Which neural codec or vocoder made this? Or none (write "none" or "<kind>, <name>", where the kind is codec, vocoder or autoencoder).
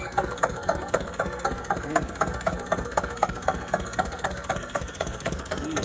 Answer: codec, SNAC